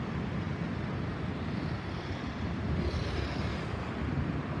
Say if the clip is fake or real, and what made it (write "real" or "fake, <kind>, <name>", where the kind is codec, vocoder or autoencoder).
real